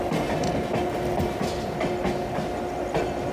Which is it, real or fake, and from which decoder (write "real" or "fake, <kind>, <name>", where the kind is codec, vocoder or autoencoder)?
real